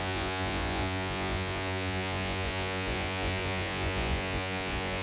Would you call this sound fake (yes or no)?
yes